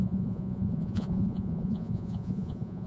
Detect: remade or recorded remade